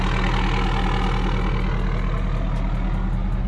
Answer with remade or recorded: recorded